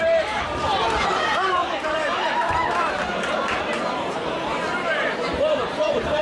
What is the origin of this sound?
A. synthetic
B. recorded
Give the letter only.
A